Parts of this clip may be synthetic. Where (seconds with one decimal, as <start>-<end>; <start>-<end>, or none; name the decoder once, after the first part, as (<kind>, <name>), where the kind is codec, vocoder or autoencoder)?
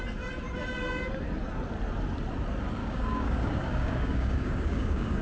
2.8-5.2 (codec, DAC)